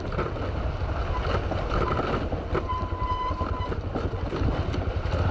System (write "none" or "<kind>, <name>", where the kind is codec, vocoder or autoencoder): none